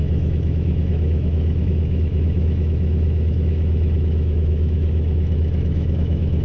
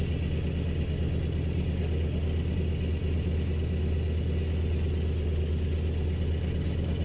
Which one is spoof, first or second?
first